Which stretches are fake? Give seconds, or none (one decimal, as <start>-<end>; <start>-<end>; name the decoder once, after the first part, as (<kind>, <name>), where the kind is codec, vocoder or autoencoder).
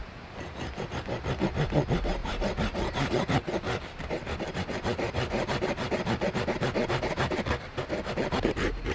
none